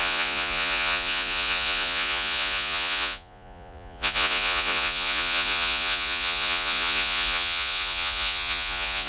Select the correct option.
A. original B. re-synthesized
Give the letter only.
B